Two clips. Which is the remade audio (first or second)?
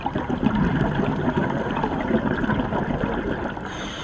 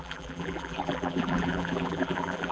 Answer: second